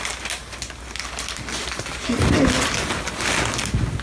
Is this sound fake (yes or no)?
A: no